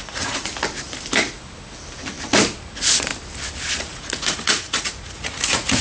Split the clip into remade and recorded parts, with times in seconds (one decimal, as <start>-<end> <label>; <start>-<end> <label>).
0.0-0.5 remade; 0.5-2.7 recorded; 2.7-3.1 remade; 3.1-3.7 recorded; 3.7-5.8 remade